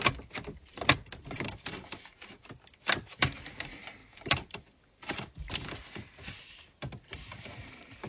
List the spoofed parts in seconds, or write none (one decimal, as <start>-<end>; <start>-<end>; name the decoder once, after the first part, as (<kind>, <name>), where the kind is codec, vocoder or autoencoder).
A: 0.7-2.4 (vocoder, BigVGAN v2); 4.0-8.1